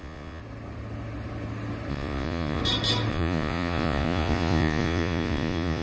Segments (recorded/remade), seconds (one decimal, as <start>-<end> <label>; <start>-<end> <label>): 0.0-0.4 remade; 0.4-1.9 recorded; 1.9-2.6 remade; 2.6-3.1 recorded; 3.1-5.8 remade